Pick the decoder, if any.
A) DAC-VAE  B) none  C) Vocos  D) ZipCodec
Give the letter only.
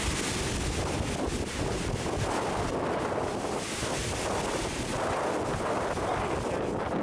B